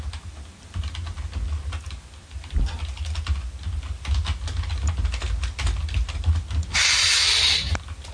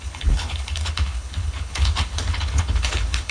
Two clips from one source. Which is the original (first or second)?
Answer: first